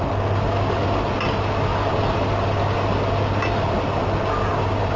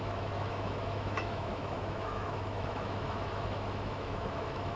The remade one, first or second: second